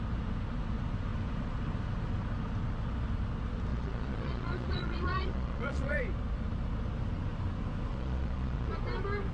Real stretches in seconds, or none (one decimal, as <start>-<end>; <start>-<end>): 0.0-3.7; 6.0-7.9; 8.7-9.3